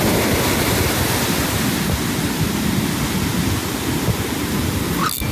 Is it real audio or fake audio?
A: real